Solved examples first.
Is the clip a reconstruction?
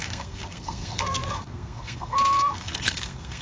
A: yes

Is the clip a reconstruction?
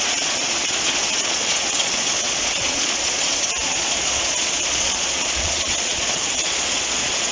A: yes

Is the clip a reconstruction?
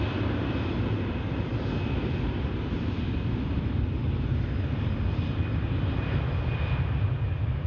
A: no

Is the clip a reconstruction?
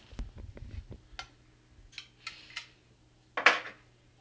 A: no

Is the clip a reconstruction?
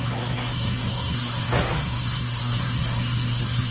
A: yes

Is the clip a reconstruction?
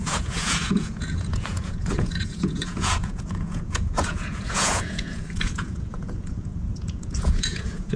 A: yes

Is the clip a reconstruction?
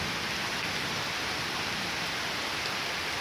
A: no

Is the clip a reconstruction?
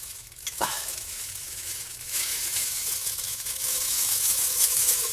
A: yes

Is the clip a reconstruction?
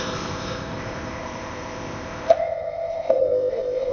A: yes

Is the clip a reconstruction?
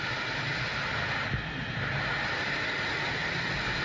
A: no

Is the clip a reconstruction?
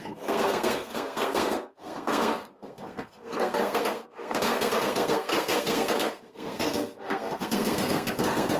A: yes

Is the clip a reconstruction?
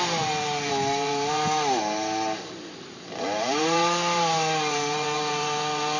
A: yes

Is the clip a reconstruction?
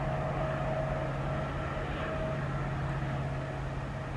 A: no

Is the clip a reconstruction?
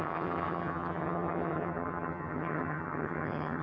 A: yes